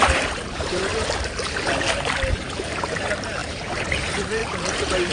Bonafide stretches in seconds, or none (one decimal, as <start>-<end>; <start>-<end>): 0.9-1.9